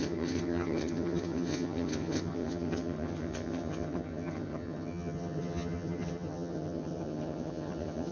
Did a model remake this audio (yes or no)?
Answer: yes